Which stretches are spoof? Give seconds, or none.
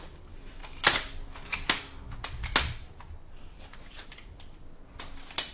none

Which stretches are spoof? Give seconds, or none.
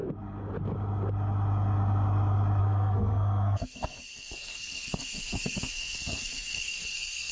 2.6-7.3